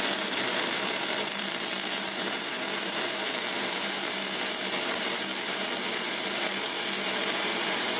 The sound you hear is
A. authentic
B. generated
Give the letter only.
B